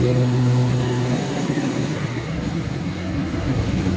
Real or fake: fake